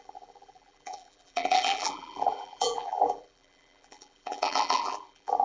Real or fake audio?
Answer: fake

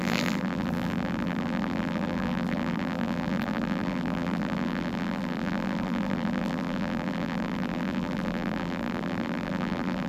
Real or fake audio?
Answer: fake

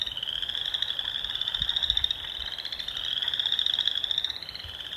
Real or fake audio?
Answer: real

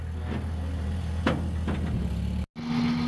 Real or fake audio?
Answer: real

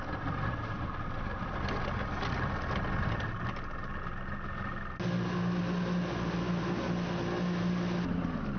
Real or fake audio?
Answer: real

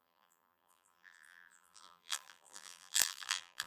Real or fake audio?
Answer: fake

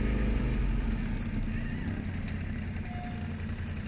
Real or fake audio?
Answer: real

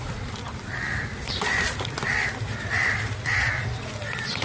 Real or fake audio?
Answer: fake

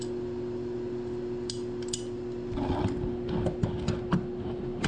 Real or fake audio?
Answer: real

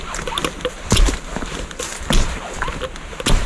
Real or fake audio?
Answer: real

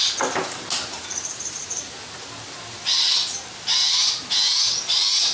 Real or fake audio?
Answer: real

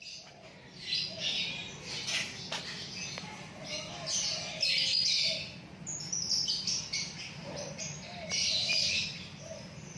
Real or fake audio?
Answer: real